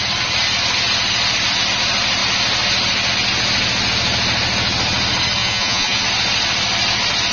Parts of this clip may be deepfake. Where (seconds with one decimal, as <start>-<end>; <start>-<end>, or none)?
5.4-6.0